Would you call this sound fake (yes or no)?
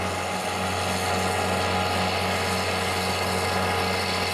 no